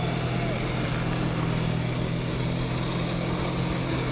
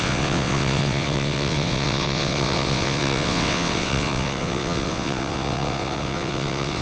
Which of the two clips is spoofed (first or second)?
second